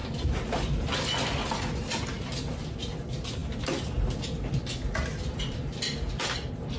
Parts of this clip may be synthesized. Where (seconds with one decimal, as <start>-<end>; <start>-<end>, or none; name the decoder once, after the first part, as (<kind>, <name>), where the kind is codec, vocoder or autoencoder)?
none